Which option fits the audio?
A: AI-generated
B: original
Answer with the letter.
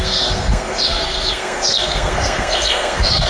A